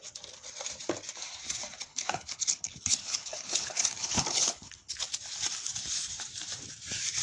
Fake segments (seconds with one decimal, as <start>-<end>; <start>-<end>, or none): 1.9-4.9